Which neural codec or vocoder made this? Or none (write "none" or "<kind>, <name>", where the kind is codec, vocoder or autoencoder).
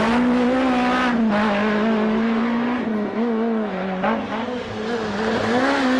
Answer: none